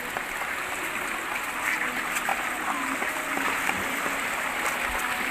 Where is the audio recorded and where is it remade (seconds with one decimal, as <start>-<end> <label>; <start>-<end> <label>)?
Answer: 0.0-5.3 recorded